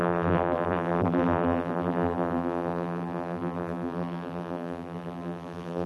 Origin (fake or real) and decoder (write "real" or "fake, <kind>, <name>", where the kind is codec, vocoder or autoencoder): fake, vocoder, BigVGAN v2